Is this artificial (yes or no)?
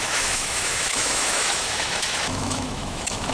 yes